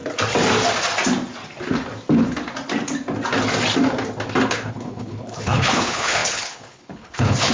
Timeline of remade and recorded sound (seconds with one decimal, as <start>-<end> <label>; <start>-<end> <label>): 0.0-4.5 recorded; 4.5-7.5 remade